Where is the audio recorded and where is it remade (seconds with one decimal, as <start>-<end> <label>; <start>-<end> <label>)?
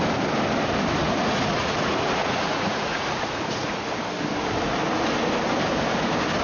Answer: 0.0-1.0 recorded; 1.0-3.9 remade; 3.9-6.4 recorded